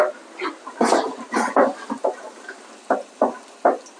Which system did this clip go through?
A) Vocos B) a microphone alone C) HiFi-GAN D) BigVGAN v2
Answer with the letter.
B